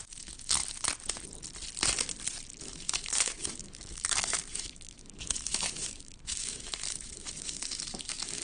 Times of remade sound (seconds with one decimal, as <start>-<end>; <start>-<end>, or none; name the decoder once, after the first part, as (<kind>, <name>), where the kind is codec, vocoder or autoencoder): 0.0-0.6 (autoencoder, DAC-VAE); 2.6-8.4